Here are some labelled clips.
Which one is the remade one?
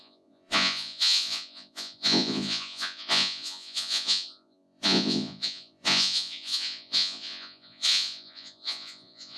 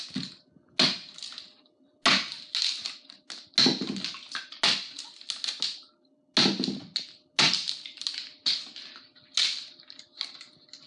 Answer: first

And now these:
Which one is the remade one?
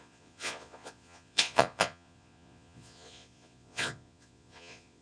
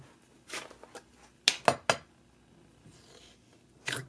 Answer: first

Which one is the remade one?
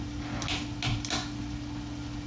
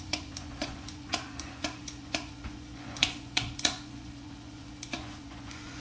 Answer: second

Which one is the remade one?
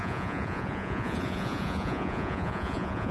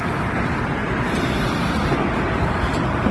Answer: first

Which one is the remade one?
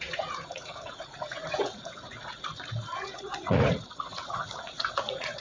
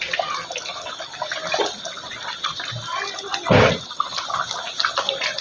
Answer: first